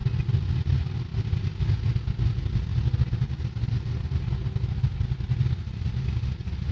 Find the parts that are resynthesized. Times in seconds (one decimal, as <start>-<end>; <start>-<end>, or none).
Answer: none